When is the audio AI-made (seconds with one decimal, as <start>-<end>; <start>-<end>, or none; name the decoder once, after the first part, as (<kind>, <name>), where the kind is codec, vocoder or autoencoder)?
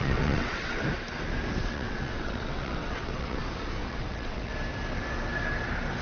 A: 0.0-0.8 (vocoder, WaveNeXt); 1.6-3.4; 3.8-4.5